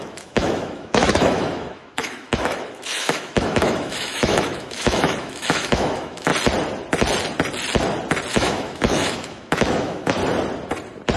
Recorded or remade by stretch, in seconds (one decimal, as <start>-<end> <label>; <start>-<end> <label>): 0.0-6.3 remade; 6.3-8.3 recorded; 8.3-10.2 remade; 10.2-11.2 recorded